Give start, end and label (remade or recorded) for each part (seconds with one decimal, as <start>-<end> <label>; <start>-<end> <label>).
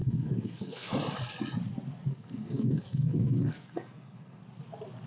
0.0-0.9 remade; 0.9-2.1 recorded; 2.1-4.4 remade; 4.4-5.1 recorded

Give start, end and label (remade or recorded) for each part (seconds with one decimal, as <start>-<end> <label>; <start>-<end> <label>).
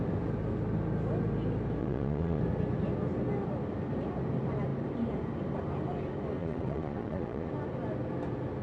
0.0-1.8 recorded; 1.8-2.4 remade; 2.4-6.4 recorded; 6.4-7.5 remade; 7.5-8.6 recorded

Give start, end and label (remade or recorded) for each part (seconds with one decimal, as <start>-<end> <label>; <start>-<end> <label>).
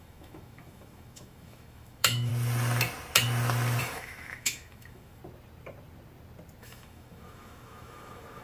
0.0-2.3 remade; 2.3-3.8 recorded; 3.8-5.2 remade; 5.2-6.6 recorded; 6.6-8.4 remade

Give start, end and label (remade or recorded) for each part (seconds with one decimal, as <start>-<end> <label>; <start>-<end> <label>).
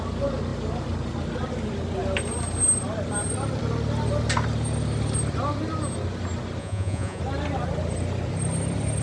0.0-6.6 recorded; 6.6-7.2 remade; 7.2-9.0 recorded